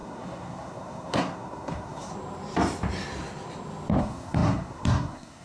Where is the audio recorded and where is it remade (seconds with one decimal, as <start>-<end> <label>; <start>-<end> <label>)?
0.0-2.1 remade; 2.1-4.0 recorded; 4.0-5.4 remade